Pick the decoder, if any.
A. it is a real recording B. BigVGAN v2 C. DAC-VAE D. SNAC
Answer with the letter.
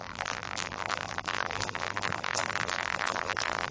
B